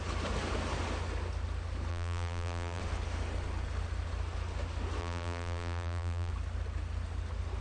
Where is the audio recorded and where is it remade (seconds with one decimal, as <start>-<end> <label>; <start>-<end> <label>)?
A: 0.0-1.9 recorded; 1.9-2.8 remade; 2.8-5.0 recorded; 5.0-6.3 remade; 6.3-7.6 recorded